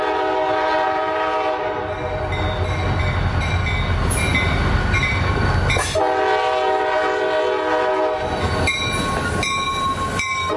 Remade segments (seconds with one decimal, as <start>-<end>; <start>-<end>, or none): none